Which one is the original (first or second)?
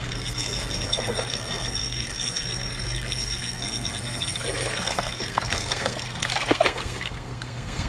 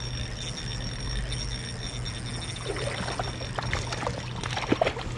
second